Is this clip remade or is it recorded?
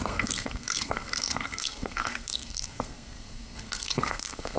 remade